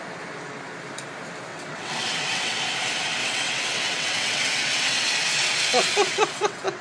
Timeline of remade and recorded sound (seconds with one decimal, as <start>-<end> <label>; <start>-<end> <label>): 0.0-1.5 recorded; 1.5-2.6 remade; 2.6-3.2 recorded; 3.2-5.1 remade; 5.1-5.7 recorded; 5.7-6.8 remade